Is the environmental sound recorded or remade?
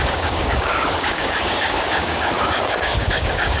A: remade